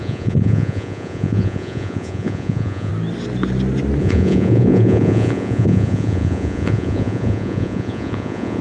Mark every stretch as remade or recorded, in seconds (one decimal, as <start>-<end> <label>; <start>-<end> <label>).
0.0-2.9 remade; 2.9-4.0 recorded; 4.0-8.6 remade